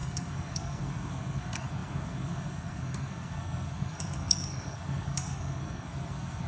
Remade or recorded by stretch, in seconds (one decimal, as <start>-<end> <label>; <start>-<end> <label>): 0.0-6.5 remade